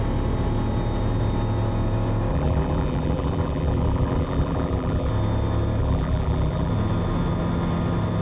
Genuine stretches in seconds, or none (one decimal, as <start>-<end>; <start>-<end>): 0.0-2.3; 5.1-5.8; 6.7-8.2